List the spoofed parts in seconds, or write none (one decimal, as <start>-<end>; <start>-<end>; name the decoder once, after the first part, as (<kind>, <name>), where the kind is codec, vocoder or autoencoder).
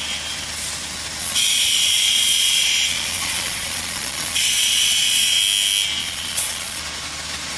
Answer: 1.2-5.4 (vocoder, Vocos); 6.0-6.8